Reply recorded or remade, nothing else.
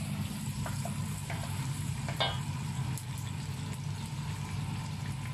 recorded